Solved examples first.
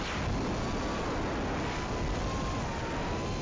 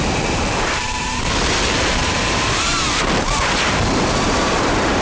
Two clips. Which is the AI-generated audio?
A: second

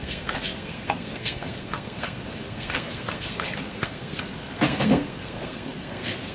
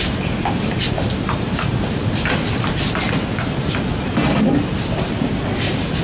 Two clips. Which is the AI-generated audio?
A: first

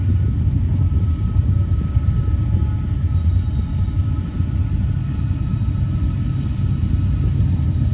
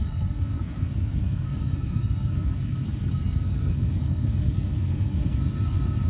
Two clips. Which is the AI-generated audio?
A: second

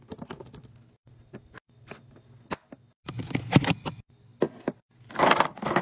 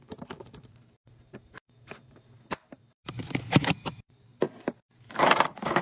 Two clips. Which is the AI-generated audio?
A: second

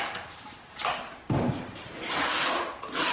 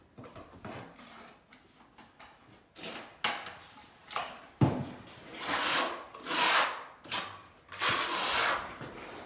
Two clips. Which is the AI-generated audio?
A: first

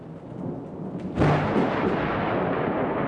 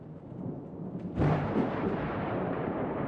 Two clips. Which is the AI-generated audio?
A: second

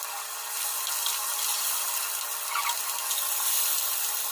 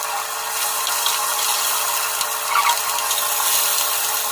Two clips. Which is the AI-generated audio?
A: second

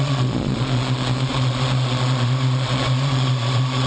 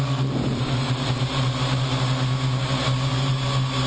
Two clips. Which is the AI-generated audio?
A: first